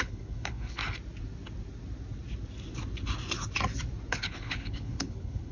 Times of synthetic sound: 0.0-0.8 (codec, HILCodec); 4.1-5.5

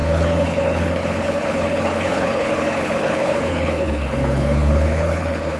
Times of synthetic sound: 0.0-5.6 (codec, HILCodec)

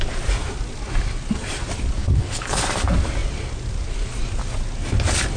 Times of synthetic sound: 2.0-2.6 (codec, HILCodec)

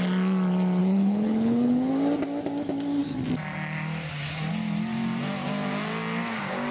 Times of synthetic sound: 0.8-1.9 (codec, HILCodec)